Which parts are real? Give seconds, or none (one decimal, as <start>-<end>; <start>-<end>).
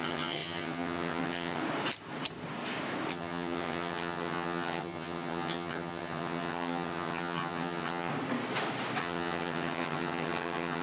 1.6-3.1; 8.1-9.0